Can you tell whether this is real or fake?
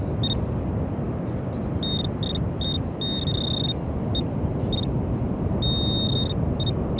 real